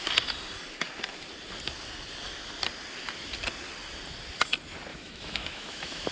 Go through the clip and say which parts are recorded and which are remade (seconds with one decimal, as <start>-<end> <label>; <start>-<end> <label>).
0.0-4.9 recorded; 4.9-6.1 remade